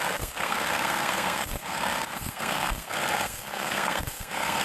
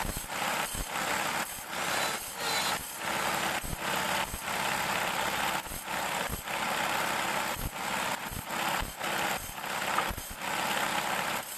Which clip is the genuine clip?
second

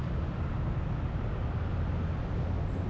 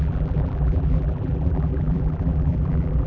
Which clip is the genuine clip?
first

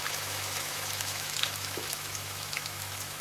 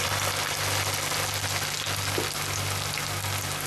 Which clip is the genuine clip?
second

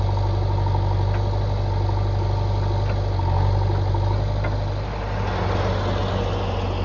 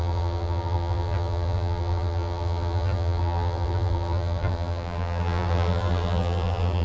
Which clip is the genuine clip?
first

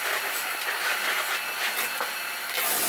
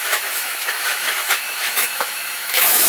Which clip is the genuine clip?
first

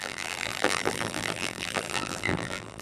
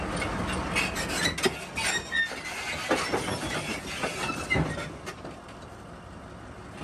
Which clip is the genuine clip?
second